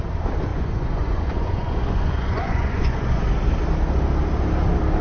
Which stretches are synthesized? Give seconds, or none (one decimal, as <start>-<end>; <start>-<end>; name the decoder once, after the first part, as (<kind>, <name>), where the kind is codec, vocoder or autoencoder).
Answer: 0.5-3.2 (vocoder, Vocos)